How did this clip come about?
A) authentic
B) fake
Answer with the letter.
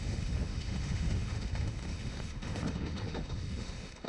B